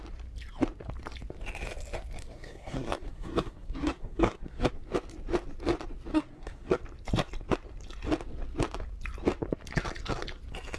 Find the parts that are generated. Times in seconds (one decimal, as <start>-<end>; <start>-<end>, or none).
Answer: 2.2-4.7; 6.1-6.8